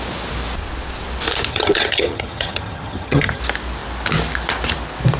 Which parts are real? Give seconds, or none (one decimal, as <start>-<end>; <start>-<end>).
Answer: 0.0-1.5; 3.4-5.2